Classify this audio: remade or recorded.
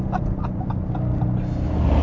recorded